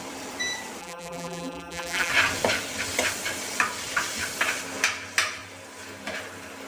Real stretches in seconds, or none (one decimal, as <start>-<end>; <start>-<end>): 0.0-0.8; 2.1-6.7